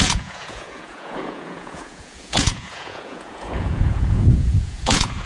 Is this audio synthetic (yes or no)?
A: yes